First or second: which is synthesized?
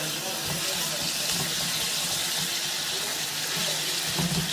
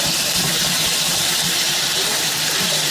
second